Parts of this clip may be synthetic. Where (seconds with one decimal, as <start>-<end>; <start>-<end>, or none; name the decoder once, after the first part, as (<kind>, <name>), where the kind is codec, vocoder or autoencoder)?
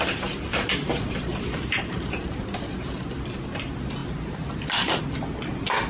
1.3-3.0 (vocoder, BigVGAN v2); 4.0-5.0